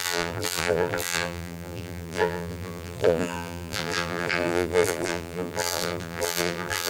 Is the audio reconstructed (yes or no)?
yes